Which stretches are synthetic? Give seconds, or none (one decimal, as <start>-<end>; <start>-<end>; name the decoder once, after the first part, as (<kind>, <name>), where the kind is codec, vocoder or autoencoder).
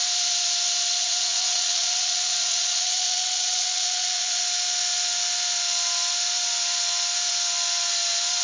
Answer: 1.0-4.4 (vocoder, WaveNeXt)